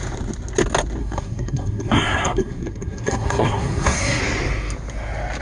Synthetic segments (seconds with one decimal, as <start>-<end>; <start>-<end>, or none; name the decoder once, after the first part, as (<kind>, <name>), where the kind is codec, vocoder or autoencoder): 1.0-4.2 (codec, SNAC)